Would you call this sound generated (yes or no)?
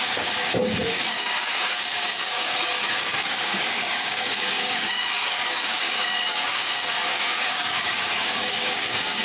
yes